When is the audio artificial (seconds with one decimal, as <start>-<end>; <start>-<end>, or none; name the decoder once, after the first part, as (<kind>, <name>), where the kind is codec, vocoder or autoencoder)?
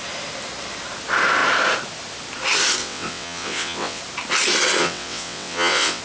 2.8-4.0 (vocoder, WaveNeXt); 4.8-6.0